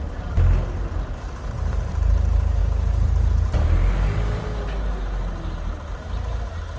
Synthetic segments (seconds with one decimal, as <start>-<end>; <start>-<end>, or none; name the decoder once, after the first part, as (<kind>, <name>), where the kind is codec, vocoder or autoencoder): none